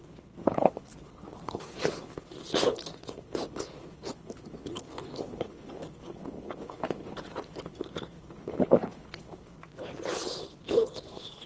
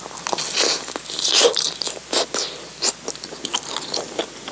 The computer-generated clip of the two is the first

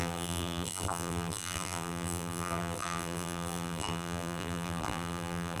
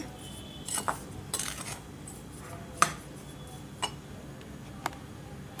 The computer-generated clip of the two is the first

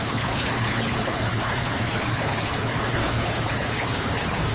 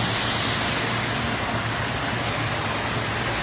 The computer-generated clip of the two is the first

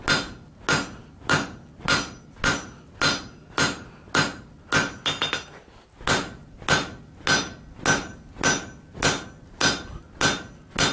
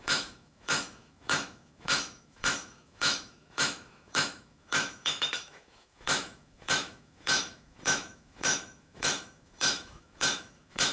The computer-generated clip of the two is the second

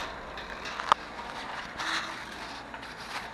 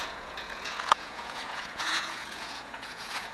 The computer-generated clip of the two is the second